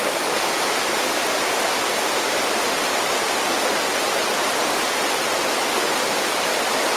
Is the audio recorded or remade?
recorded